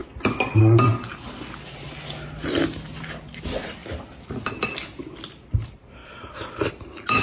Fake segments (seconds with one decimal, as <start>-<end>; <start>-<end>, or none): 0.0-0.6; 6.0-6.7